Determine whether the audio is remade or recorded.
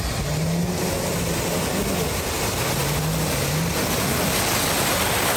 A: recorded